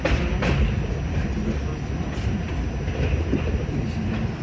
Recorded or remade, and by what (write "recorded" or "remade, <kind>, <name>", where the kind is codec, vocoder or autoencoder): recorded